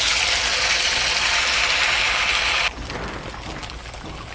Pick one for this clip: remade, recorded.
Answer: recorded